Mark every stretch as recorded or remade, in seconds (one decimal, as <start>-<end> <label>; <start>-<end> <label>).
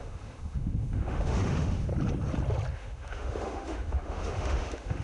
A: 0.0-1.9 remade; 1.9-2.7 recorded; 2.7-5.0 remade